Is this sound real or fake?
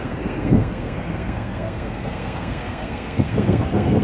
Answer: fake